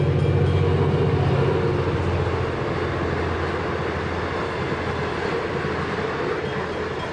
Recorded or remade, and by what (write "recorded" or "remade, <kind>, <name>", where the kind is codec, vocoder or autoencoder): recorded